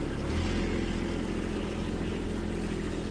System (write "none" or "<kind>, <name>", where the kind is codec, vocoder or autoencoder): none